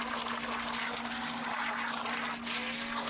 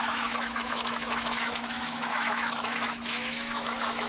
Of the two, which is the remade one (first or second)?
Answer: second